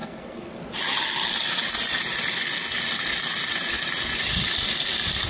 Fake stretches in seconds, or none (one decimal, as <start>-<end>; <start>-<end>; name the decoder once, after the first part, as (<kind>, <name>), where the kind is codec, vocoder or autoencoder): 0.0-0.6 (codec, SNAC)